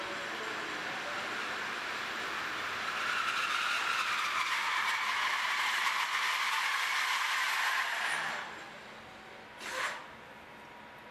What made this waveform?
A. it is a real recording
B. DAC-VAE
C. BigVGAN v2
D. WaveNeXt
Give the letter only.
A